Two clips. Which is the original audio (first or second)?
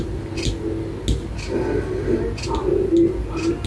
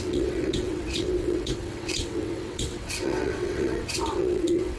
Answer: first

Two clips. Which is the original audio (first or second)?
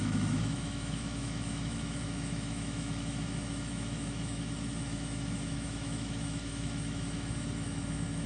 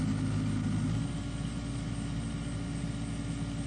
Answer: second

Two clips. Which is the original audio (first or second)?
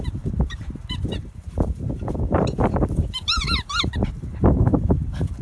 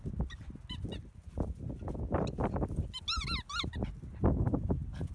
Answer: second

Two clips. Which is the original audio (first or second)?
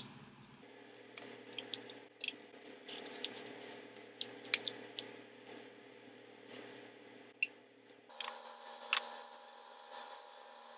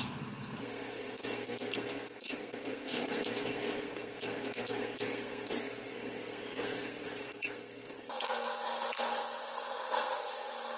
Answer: first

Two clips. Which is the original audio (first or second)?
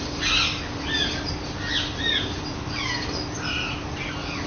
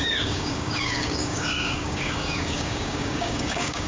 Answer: first